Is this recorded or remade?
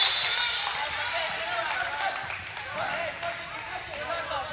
recorded